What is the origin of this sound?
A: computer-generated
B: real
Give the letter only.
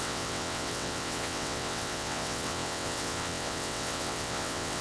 A